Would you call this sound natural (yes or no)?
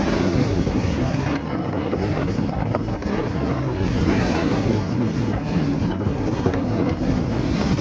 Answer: no